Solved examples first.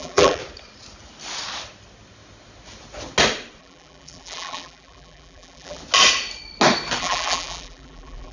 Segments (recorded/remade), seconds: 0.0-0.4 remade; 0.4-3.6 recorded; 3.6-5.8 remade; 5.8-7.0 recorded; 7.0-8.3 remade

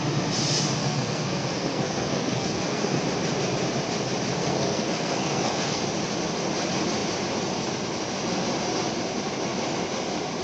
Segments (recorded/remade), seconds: 0.0-0.8 recorded; 0.8-3.0 remade; 3.0-4.3 recorded; 4.3-5.8 remade; 5.8-10.4 recorded